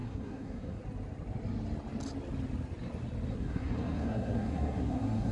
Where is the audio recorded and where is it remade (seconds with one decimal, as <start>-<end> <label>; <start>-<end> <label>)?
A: 0.0-0.8 remade; 0.8-3.3 recorded; 3.3-5.3 remade